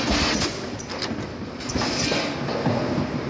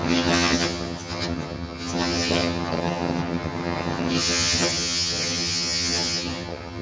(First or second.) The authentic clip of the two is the first